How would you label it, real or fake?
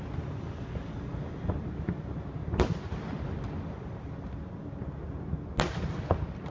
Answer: real